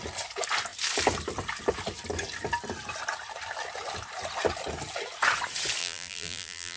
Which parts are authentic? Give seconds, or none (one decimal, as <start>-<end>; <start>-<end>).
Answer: 0.0-5.8